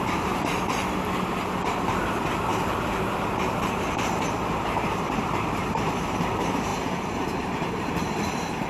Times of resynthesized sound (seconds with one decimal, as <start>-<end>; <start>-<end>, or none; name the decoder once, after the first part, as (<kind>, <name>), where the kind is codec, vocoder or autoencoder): 0.0-0.8 (vocoder, BigVGAN v2); 2.0-8.7